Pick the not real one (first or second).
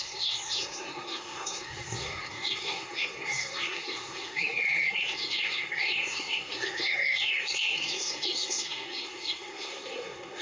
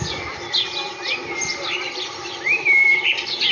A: first